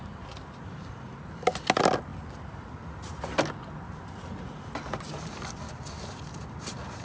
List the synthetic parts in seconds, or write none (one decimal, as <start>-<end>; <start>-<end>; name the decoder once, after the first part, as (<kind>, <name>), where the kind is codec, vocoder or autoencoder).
none